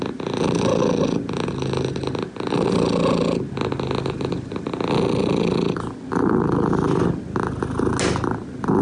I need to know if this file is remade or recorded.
recorded